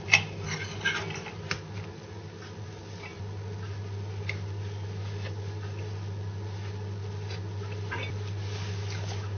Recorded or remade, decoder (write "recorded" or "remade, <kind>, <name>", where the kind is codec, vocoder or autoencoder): recorded